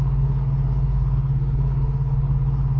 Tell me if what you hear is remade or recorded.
remade